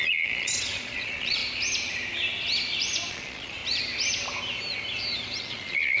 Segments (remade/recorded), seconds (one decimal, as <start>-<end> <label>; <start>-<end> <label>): 0.0-1.4 remade; 1.4-3.1 recorded; 3.1-3.6 remade; 3.6-5.4 recorded; 5.4-6.0 remade